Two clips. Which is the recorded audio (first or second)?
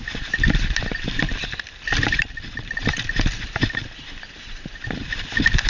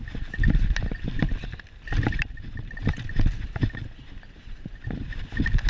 second